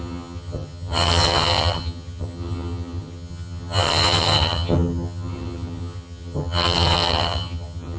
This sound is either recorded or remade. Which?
remade